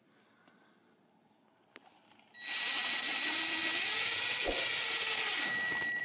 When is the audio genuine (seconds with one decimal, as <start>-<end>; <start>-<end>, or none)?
0.0-6.0